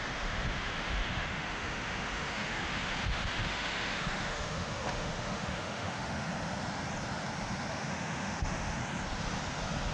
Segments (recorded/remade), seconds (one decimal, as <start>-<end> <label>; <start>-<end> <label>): 0.0-6.3 remade; 6.3-7.7 recorded; 7.7-8.8 remade; 8.8-9.9 recorded